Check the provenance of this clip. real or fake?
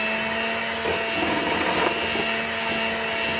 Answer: real